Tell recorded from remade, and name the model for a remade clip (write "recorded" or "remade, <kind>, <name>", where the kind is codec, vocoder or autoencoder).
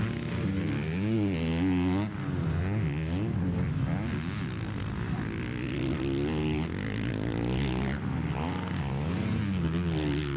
recorded